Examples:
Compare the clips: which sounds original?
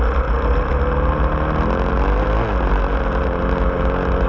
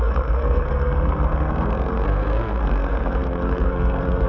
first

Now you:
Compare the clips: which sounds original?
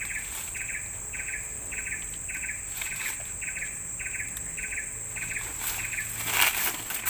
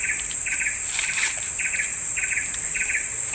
first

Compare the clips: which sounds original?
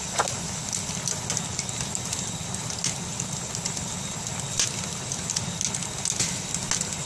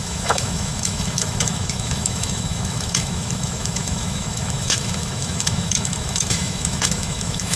first